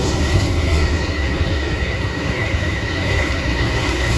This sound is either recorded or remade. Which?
remade